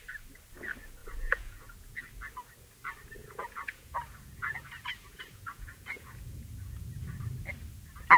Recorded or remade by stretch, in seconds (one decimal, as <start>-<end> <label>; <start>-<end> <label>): 0.0-1.0 recorded; 1.0-2.0 remade; 2.0-3.2 recorded; 3.2-7.0 remade; 7.0-8.2 recorded